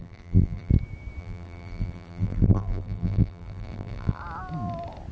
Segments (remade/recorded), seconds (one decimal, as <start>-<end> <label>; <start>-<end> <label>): 0.0-0.7 remade; 0.7-1.2 recorded; 1.2-4.2 remade; 4.2-5.1 recorded